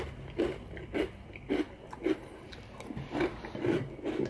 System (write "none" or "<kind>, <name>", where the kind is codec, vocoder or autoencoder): none